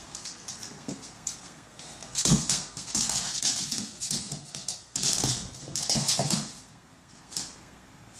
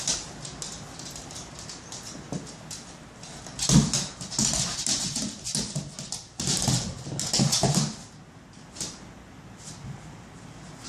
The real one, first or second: second